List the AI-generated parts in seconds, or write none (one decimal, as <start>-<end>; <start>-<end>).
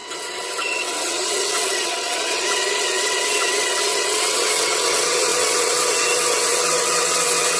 0.0-7.6